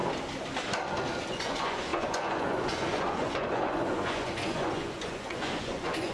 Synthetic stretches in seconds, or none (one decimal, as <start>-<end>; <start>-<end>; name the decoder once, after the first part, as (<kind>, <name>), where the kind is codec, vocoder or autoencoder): 1.3-6.1 (vocoder, Vocos)